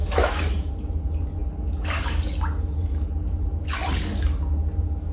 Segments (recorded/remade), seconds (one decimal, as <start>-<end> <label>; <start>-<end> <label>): 0.0-0.7 remade; 0.7-5.1 recorded